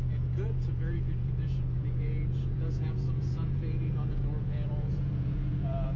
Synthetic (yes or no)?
yes